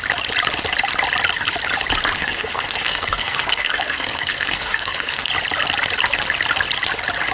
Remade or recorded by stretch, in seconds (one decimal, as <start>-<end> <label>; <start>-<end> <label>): 0.0-2.2 recorded; 2.2-5.3 remade; 5.3-7.3 recorded